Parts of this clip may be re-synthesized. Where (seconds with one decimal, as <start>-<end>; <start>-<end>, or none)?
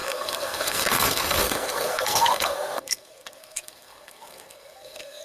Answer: 0.0-5.2